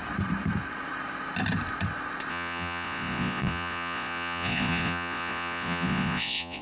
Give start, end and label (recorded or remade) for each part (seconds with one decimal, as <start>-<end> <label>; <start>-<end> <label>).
0.0-2.3 recorded; 2.3-6.6 remade